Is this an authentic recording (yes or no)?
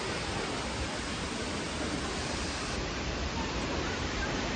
yes